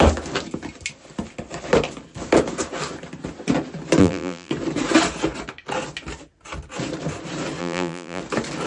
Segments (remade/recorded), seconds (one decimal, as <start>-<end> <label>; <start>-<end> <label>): 0.0-4.0 recorded; 4.0-4.5 remade; 4.5-7.6 recorded; 7.6-8.2 remade; 8.2-8.7 recorded